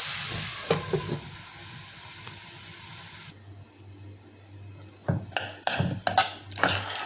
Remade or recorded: recorded